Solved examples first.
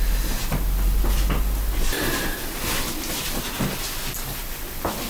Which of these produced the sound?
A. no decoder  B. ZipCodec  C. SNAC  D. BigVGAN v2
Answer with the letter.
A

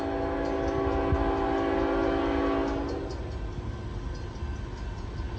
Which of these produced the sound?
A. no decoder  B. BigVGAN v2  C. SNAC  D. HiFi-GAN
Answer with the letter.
A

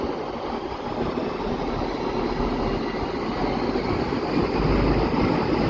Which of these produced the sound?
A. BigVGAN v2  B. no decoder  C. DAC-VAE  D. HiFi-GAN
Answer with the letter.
B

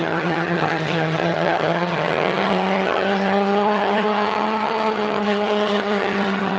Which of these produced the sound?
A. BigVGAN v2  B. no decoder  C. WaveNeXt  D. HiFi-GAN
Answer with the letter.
D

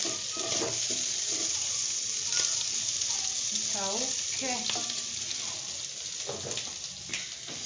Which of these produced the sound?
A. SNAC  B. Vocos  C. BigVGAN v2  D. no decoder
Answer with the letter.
D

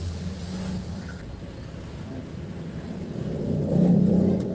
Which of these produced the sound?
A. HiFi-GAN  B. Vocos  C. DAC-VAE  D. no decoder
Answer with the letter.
D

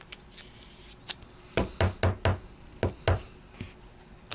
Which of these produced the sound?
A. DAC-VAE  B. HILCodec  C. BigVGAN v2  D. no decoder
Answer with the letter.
D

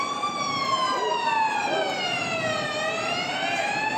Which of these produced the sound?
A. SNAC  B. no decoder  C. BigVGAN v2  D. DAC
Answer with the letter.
B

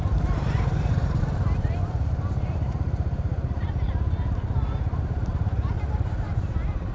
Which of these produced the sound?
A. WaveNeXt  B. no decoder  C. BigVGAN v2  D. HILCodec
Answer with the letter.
C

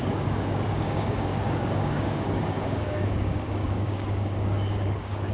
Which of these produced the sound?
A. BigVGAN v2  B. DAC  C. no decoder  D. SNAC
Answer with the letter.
B